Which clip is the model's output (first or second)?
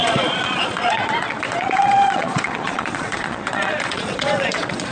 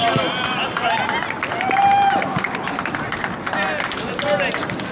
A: first